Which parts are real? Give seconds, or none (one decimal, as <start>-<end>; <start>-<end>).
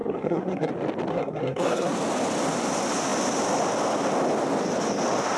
0.7-1.1; 1.9-5.4